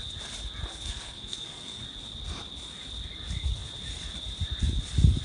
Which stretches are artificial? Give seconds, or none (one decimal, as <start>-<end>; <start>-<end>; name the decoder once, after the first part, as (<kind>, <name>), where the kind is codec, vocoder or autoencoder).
0.7-1.8 (codec, SNAC)